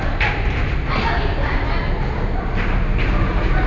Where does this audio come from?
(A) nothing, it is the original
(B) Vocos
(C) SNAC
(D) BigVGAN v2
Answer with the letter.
A